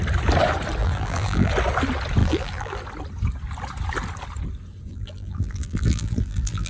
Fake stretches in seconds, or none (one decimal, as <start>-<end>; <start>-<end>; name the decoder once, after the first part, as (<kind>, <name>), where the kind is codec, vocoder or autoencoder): 0.8-1.5 (vocoder, BigVGAN v2); 2.2-2.8; 4.9-6.7